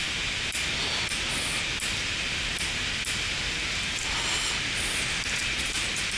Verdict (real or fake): real